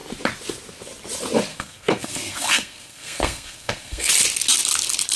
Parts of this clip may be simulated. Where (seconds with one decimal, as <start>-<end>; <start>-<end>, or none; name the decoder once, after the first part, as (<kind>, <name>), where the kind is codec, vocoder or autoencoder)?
1.5-4.1 (codec, SNAC)

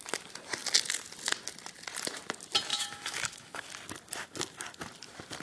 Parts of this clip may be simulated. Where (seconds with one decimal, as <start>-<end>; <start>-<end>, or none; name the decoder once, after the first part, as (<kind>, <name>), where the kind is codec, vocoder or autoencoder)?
2.7-3.7 (autoencoder, DAC-VAE)

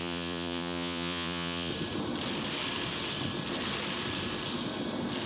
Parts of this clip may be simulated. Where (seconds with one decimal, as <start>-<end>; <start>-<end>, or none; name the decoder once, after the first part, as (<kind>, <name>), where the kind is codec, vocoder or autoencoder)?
0.0-1.7 (vocoder, Vocos)

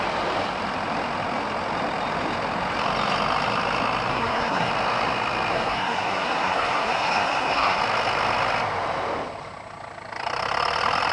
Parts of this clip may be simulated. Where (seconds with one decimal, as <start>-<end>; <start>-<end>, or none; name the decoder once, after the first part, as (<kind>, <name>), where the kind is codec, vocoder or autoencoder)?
4.1-4.7 (codec, SNAC); 5.5-7.8